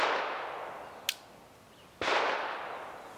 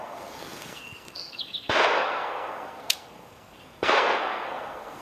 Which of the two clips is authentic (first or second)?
first